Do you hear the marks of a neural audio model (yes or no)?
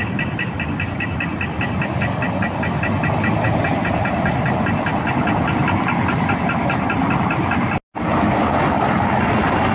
no